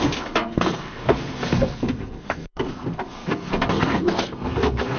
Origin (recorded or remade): remade